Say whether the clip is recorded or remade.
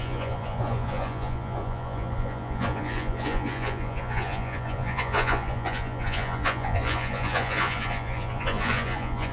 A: remade